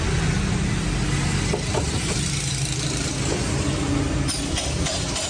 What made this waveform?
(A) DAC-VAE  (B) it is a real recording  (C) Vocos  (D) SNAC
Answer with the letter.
B